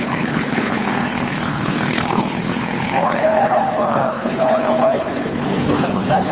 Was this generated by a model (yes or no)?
yes